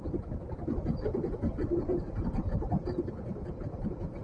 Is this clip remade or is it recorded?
recorded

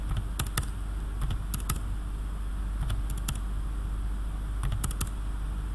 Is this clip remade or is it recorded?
recorded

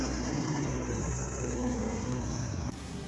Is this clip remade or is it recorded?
remade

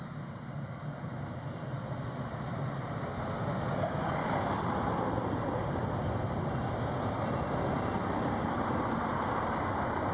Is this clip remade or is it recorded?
recorded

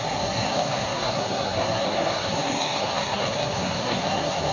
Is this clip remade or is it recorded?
remade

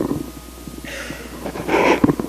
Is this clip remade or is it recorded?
recorded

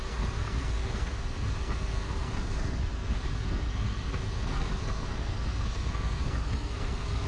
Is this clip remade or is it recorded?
remade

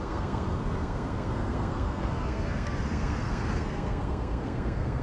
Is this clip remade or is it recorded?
remade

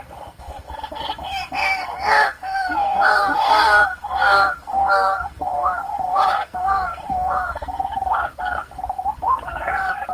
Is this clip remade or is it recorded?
remade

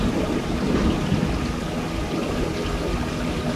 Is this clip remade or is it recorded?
recorded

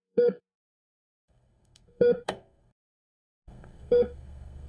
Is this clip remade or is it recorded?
remade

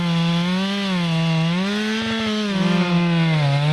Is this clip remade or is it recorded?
recorded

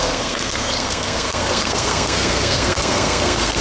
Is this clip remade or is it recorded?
remade